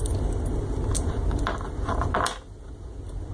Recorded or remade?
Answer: recorded